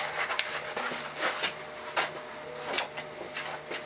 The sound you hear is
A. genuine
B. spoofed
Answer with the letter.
A